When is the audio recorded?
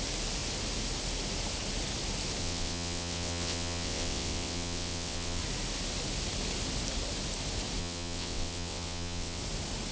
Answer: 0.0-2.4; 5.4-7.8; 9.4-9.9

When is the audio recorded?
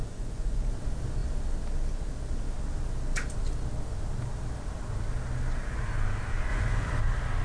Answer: 0.7-6.5; 7.0-7.4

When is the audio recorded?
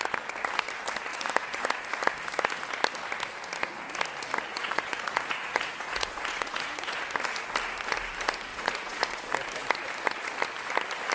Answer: 0.0-1.1; 1.6-4.5; 7.0-8.5; 9.2-11.1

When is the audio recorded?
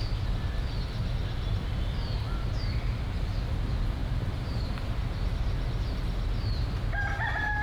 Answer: 0.0-4.0; 4.9-7.6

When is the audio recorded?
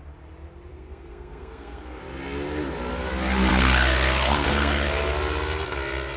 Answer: 0.0-0.7; 2.0-3.5; 5.1-6.2